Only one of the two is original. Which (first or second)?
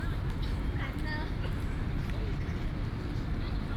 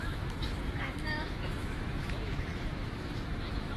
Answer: first